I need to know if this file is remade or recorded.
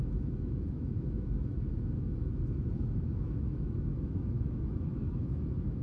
remade